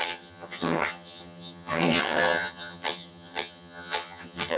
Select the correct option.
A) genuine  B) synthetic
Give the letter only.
B